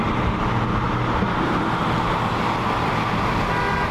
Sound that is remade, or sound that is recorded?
recorded